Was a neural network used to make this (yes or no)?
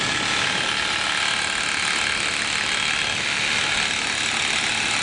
no